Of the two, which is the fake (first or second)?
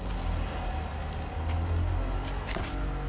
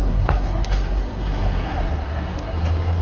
second